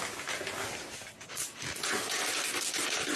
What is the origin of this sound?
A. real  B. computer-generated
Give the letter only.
A